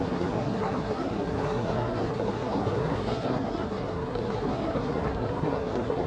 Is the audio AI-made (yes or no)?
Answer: yes